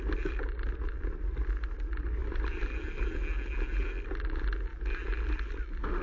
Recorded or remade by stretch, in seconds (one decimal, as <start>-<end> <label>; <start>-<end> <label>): 0.0-6.0 recorded